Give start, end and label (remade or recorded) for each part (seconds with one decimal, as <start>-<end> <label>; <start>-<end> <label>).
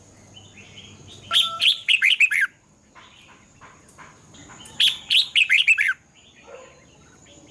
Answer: 0.0-7.5 recorded